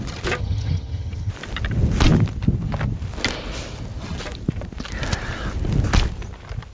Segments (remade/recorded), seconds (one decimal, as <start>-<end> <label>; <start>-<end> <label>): 0.0-0.4 recorded; 0.4-1.3 remade; 1.3-6.7 recorded